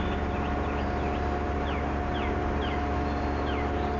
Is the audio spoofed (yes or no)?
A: no